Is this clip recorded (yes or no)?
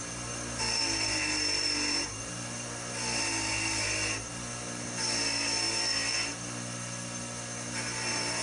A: yes